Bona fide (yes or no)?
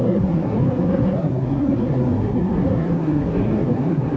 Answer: no